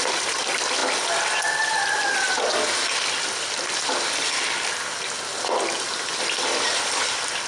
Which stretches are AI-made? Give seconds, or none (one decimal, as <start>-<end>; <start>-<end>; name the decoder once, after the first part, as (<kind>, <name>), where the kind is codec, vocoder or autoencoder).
none